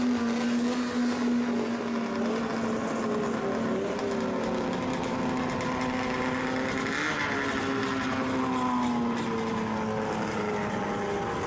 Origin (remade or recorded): recorded